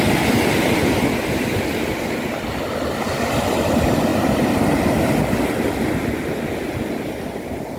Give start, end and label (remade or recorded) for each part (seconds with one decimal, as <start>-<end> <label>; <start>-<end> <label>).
0.0-7.8 recorded